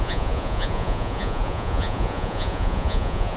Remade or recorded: remade